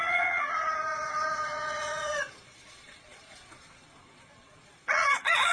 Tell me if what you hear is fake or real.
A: fake